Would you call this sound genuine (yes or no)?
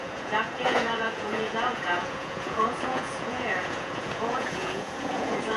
no